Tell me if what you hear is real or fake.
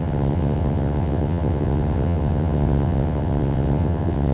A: fake